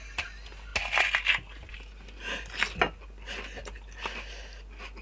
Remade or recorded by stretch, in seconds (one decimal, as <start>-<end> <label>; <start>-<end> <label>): 0.0-5.0 recorded